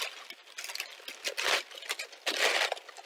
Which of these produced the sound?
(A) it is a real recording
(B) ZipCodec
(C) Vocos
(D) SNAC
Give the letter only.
A